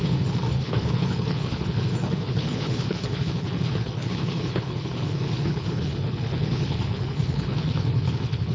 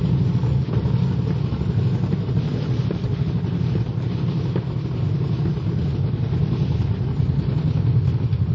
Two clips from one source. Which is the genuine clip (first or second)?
second